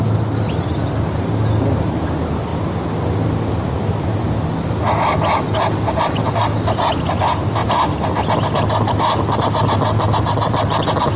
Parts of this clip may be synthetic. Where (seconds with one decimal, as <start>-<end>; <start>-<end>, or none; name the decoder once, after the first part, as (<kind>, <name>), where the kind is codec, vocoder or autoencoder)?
none